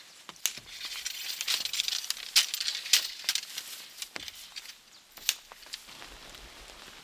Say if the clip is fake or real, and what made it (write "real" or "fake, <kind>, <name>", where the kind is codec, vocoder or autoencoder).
real